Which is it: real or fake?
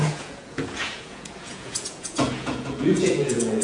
fake